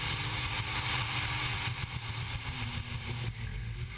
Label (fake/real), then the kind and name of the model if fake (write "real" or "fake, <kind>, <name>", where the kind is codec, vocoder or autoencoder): real